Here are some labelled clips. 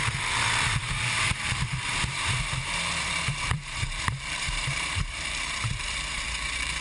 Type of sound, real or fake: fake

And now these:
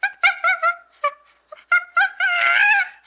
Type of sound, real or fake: real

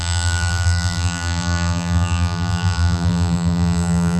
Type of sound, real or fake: fake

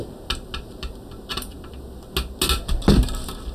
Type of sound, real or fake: real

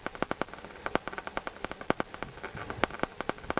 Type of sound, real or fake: real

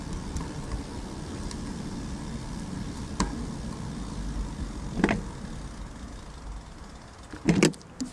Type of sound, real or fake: real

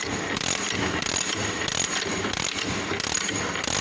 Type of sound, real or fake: real